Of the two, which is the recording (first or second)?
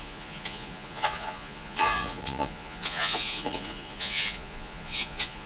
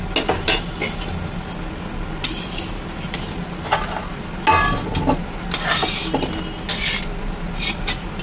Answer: second